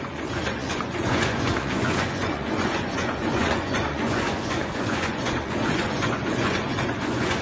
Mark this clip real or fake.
fake